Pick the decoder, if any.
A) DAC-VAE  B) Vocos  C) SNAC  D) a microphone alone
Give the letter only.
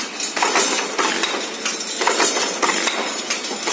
D